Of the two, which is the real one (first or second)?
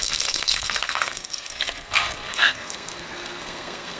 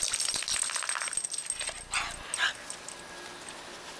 second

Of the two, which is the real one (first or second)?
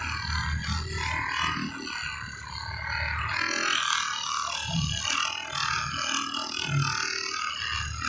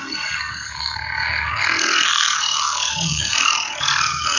first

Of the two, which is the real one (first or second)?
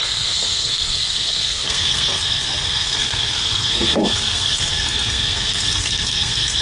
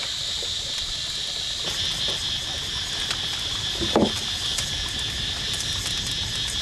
second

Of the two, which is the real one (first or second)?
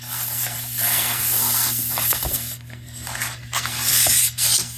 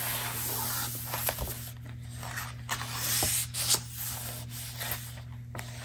second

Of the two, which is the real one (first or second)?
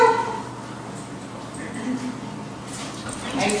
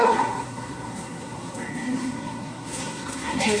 first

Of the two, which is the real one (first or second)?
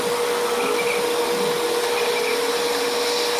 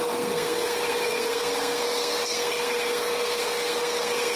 first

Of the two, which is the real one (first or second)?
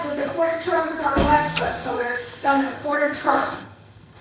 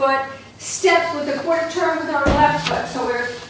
second